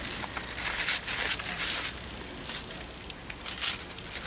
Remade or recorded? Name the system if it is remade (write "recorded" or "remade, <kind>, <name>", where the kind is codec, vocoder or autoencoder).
recorded